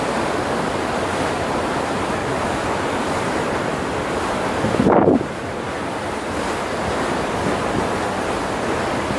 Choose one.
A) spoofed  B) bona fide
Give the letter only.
A